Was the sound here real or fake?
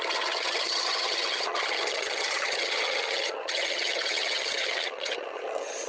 fake